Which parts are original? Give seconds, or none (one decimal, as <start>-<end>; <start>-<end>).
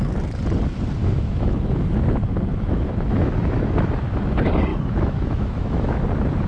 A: 0.0-1.0; 1.8-2.5; 3.9-4.7; 6.0-6.5